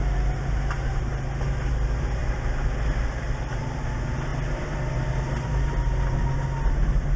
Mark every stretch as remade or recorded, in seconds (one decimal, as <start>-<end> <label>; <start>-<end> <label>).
0.0-2.2 recorded; 2.2-3.6 remade; 3.6-7.2 recorded